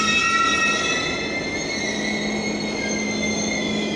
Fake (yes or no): no